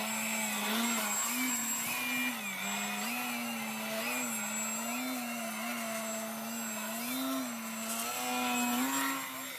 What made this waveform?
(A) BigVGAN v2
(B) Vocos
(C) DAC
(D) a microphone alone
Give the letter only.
D